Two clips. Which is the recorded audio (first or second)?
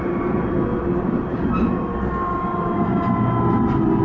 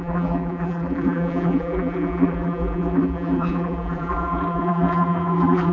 first